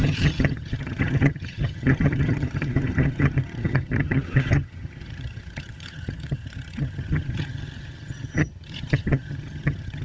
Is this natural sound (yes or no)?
no